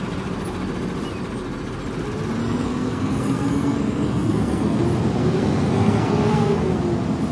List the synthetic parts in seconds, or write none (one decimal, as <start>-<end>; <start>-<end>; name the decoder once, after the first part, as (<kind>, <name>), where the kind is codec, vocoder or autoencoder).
2.4-4.8 (codec, SNAC); 5.2-6.8